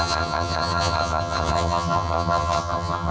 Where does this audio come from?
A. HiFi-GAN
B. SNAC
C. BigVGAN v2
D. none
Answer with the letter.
A